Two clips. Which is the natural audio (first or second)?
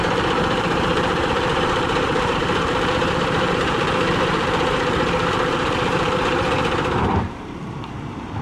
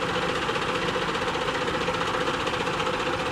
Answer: second